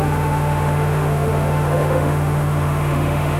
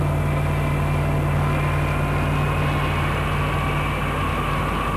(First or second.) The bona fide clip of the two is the second